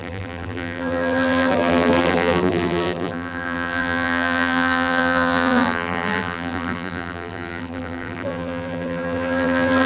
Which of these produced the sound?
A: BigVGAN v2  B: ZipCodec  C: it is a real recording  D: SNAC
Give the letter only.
A